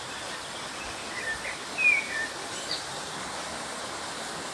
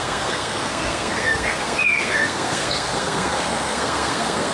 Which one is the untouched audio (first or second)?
first